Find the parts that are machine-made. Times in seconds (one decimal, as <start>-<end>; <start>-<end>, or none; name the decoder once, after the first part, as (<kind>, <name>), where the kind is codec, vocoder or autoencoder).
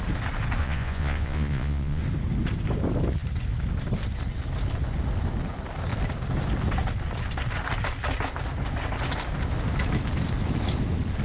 0.6-2.0 (vocoder, Vocos)